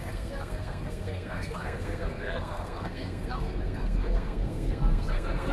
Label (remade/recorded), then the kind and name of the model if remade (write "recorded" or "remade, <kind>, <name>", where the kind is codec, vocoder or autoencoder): remade, codec, SNAC